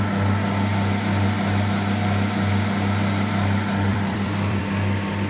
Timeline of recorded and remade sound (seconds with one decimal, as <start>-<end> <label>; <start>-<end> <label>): 0.0-3.9 recorded; 3.9-4.6 remade; 4.6-5.3 recorded